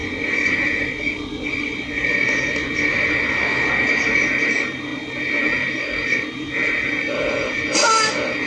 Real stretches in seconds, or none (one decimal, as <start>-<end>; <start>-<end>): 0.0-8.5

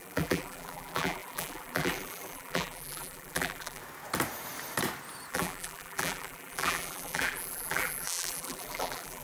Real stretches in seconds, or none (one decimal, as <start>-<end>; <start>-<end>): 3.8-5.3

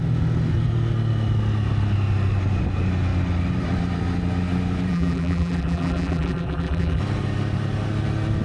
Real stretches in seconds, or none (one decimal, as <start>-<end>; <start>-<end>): 0.0-4.9; 7.0-8.4

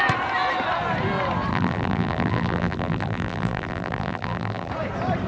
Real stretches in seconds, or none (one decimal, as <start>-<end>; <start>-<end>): 0.0-1.5; 4.7-5.3

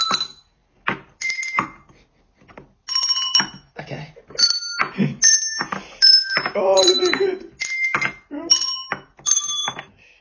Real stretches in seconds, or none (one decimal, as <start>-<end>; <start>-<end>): 0.0-0.6; 1.3-9.6

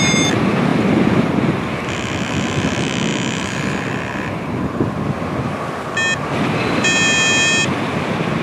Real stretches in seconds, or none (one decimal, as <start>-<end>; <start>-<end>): 0.0-0.7; 1.7-3.1; 4.9-8.4

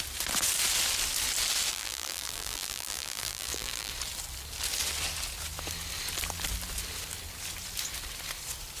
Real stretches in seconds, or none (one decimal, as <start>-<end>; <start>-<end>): 0.0-1.7; 3.9-8.8